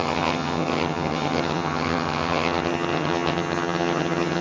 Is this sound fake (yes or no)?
yes